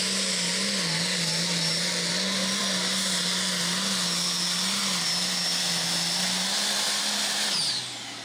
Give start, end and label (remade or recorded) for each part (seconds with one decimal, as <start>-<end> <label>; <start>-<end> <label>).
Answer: 0.0-8.2 recorded